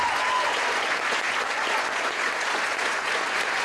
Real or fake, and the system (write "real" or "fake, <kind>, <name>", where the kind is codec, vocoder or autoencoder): fake, vocoder, Vocos